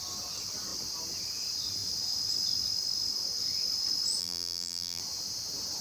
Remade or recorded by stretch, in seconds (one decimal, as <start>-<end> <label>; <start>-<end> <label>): 0.0-4.2 recorded; 4.2-5.0 remade; 5.0-5.8 recorded